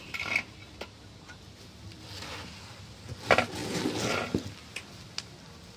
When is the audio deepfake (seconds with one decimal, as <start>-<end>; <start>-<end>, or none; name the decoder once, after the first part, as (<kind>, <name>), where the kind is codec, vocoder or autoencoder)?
none